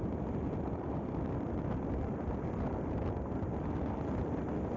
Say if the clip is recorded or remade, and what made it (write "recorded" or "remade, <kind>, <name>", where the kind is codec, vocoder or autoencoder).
remade, vocoder, BigVGAN v2